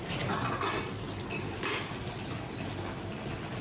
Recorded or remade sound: recorded